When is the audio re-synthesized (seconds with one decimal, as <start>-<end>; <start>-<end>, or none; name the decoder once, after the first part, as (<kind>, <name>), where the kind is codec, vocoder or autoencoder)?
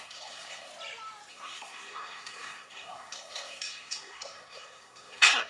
0.0-0.7 (codec, SNAC); 1.3-5.5